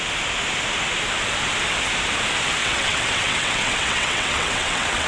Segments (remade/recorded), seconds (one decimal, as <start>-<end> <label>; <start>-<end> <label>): 0.0-2.6 recorded; 2.6-5.1 remade